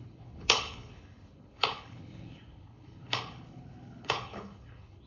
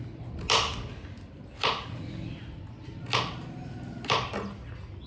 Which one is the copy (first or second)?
first